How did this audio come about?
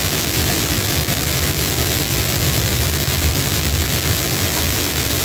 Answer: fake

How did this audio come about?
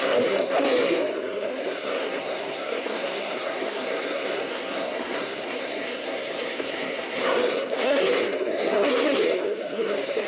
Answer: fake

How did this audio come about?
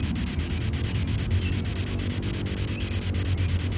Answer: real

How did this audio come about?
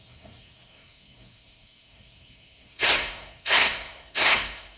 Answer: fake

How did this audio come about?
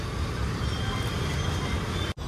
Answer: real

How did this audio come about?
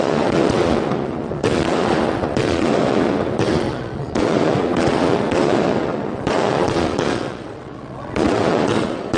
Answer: fake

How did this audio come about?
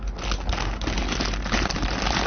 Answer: real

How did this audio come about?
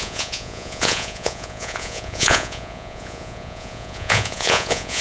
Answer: fake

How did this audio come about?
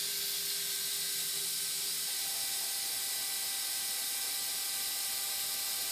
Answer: real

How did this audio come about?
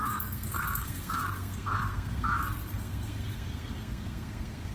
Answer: fake